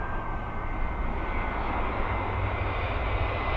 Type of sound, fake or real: real